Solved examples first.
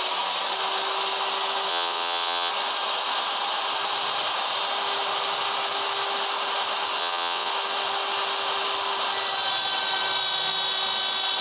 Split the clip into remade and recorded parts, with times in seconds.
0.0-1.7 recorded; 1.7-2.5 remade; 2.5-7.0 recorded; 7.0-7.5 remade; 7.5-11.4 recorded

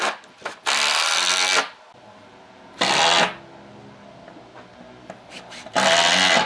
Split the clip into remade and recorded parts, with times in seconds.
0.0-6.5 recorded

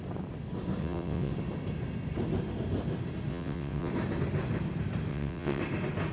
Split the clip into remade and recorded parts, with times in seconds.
0.0-0.8 recorded; 0.8-1.3 remade; 1.3-3.3 recorded; 3.3-3.9 remade; 3.9-5.1 recorded; 5.1-5.6 remade; 5.6-6.1 recorded

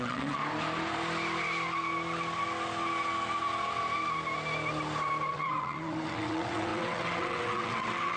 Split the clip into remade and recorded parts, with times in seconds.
0.0-0.4 remade; 0.4-5.3 recorded; 5.3-8.2 remade

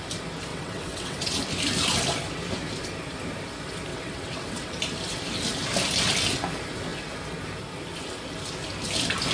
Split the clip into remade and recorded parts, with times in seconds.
0.0-0.5 recorded; 0.5-1.4 remade; 1.4-3.9 recorded; 3.9-4.8 remade; 4.8-9.3 recorded

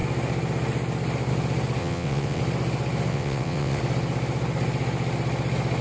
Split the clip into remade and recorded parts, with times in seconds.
0.0-1.8 recorded; 1.8-2.4 remade; 2.4-3.1 recorded; 3.1-3.8 remade; 3.8-5.8 recorded

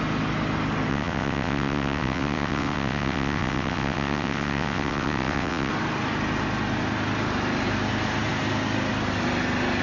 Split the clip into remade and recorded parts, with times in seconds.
0.0-0.9 recorded; 0.9-5.7 remade; 5.7-9.8 recorded